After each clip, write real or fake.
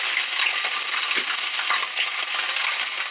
real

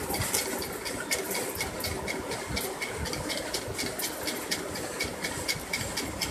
real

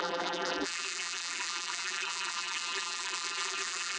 fake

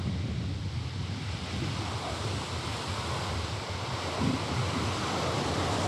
real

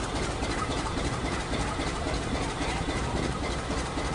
fake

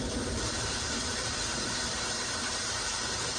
fake